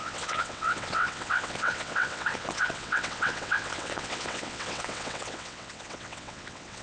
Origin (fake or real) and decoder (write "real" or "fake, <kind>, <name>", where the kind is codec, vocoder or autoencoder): fake, vocoder, WaveNeXt